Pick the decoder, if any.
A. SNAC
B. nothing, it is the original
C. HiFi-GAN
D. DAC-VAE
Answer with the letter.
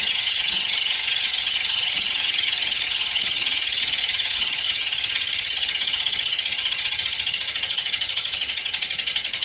C